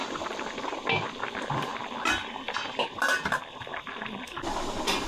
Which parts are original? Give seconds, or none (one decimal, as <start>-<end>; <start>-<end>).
0.6-5.1